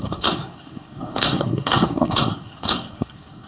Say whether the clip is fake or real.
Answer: fake